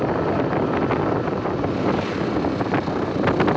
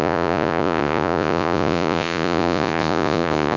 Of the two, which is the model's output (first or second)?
second